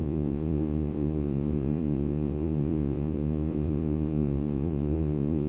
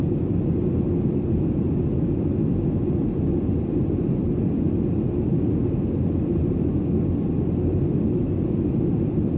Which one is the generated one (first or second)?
first